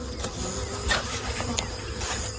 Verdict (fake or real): real